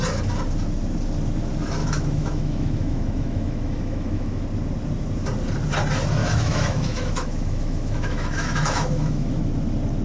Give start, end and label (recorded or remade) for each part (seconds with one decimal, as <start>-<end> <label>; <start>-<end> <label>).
0.0-1.8 recorded; 1.8-4.4 remade; 4.4-6.2 recorded; 6.2-9.5 remade; 9.5-10.0 recorded